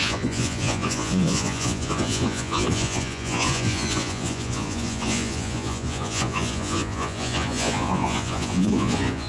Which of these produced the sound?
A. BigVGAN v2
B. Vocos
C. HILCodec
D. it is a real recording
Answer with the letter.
B